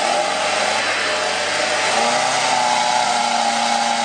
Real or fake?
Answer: real